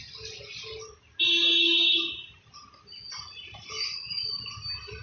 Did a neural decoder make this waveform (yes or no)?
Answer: no